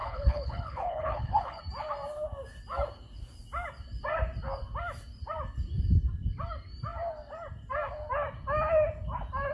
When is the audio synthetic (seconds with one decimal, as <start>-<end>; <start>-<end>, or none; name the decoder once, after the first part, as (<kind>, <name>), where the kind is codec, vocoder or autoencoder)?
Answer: 0.0-1.6 (codec, HILCodec)